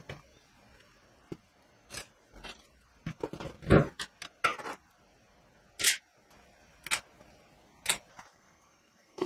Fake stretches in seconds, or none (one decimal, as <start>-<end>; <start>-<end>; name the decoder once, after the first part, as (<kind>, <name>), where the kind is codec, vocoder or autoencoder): 8.3-9.3 (codec, SNAC)

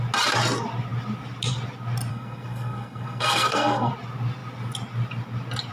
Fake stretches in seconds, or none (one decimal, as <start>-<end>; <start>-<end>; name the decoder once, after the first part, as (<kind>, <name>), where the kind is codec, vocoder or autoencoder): 2.1-3.9 (codec, SNAC)

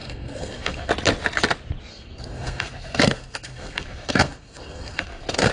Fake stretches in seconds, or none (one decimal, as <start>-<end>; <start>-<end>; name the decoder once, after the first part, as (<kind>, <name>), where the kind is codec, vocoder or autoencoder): 0.0-0.9 (codec, SNAC); 1.9-5.5

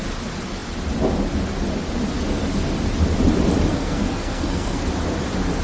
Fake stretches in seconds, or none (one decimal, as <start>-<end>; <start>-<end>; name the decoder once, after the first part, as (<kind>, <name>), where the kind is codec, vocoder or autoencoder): 3.7-4.8 (codec, SNAC)

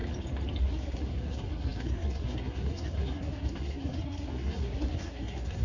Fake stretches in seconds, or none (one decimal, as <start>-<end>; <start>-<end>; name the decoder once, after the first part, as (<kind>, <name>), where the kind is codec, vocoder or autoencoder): 0.6-5.6 (codec, SNAC)

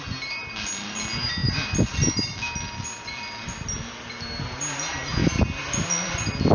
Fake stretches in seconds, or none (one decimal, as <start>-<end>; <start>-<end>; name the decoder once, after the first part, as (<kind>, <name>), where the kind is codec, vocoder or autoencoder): none